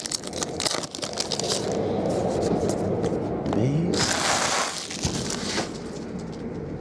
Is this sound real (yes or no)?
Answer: yes